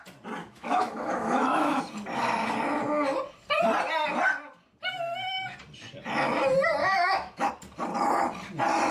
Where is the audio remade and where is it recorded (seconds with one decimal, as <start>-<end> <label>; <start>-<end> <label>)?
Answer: 0.0-0.4 recorded; 0.4-1.8 remade; 1.8-6.8 recorded; 6.8-7.5 remade; 7.5-8.9 recorded